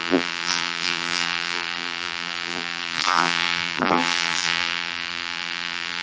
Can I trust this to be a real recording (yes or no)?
no